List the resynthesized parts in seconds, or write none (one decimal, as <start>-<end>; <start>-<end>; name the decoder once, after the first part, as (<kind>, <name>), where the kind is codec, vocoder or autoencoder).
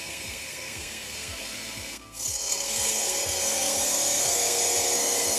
0.0-5.4 (codec, SNAC)